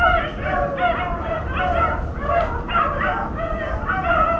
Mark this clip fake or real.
real